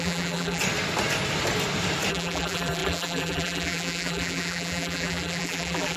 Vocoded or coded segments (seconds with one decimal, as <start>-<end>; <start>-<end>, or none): 0.0-0.6; 2.1-6.0

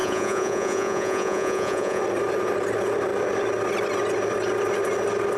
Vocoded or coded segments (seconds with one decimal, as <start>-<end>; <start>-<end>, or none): 0.0-2.0

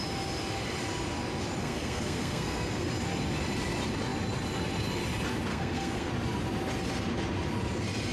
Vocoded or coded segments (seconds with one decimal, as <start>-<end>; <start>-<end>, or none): 1.6-2.9; 5.5-6.1

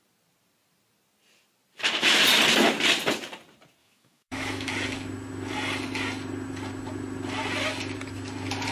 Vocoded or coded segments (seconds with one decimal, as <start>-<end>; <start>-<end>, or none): 3.8-4.7